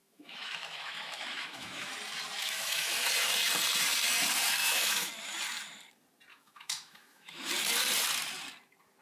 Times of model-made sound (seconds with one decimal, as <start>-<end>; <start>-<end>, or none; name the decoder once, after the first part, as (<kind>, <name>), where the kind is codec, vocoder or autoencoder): 0.0-1.9 (autoencoder, DAC-VAE); 2.4-3.1; 4.6-5.1; 6.3-7.5